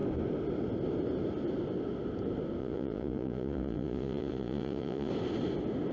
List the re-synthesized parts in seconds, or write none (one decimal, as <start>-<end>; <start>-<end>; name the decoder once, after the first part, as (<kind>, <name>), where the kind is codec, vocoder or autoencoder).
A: 2.6-5.1 (vocoder, Vocos)